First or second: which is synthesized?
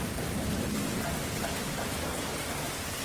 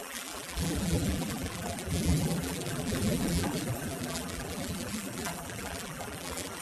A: second